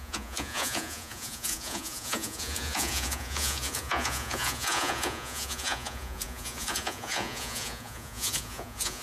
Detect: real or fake fake